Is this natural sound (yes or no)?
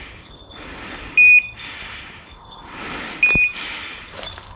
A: yes